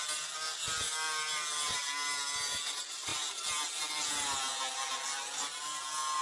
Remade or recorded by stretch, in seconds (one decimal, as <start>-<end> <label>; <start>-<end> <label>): 0.0-6.2 recorded

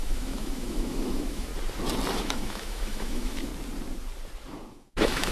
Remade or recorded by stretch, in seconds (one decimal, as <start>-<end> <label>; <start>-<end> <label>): 0.0-1.5 remade; 1.5-2.2 recorded; 2.2-3.5 remade; 3.5-4.7 recorded; 4.7-5.3 remade